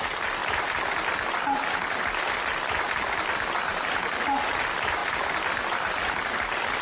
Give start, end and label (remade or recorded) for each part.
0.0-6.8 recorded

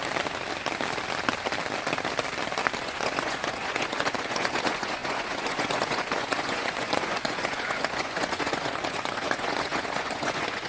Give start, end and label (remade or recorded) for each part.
0.0-2.8 recorded; 2.8-10.7 remade

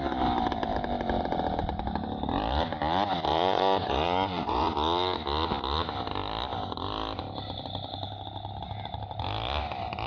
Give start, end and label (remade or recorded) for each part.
0.0-3.3 recorded; 3.3-4.7 remade; 4.7-10.1 recorded